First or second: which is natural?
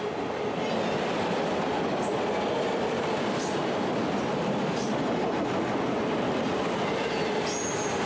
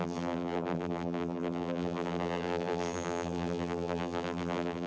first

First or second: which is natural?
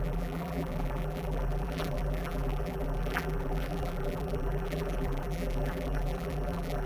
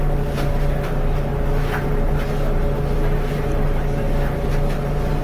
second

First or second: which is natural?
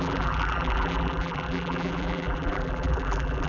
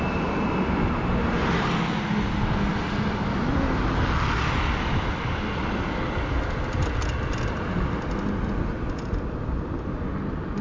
second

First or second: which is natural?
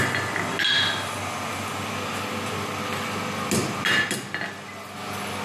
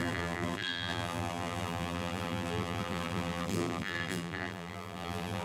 first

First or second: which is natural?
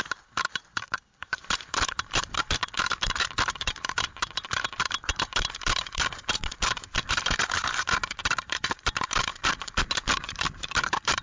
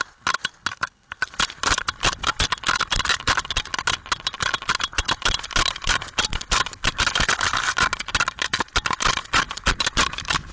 second